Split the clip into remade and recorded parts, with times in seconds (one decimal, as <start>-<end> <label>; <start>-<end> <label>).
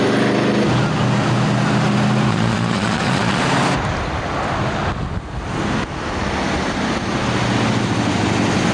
0.0-2.3 recorded; 2.3-3.4 remade; 3.4-8.7 recorded